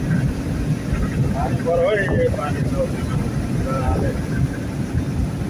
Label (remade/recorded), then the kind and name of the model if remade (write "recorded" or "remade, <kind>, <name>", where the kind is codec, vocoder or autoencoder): recorded